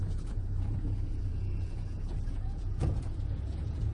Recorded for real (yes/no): no